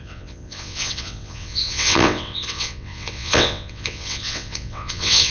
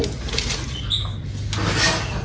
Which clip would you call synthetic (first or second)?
first